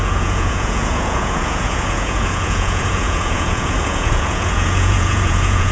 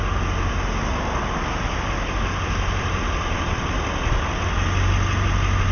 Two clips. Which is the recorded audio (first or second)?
second